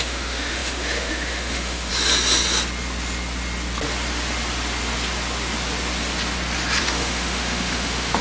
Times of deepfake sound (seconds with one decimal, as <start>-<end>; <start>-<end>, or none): 0.0-1.9; 6.8-8.2